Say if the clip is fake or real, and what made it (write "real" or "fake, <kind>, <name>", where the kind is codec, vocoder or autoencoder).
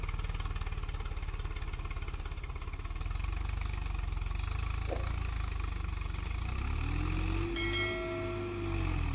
real